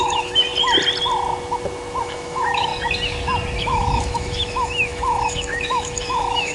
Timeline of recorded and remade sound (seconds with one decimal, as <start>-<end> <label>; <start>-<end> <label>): 0.0-0.5 remade; 0.5-2.0 recorded; 2.0-2.7 remade; 2.7-3.6 recorded; 3.6-6.5 remade